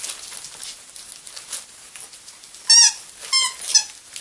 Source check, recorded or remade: recorded